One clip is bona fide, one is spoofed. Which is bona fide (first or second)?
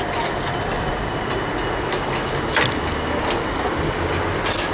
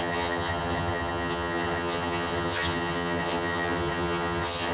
first